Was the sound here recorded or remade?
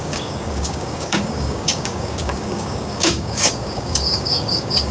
remade